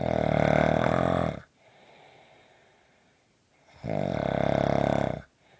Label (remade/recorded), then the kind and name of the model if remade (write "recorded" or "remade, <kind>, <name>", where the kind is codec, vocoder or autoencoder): recorded